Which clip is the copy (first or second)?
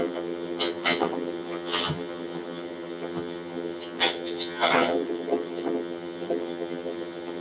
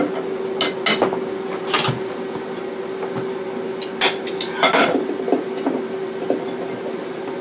first